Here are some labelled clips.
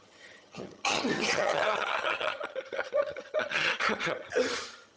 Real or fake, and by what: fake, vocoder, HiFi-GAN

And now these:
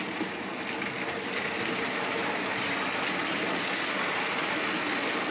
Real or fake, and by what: real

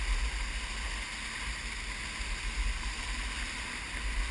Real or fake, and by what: real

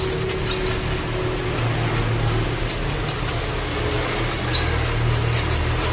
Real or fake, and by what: real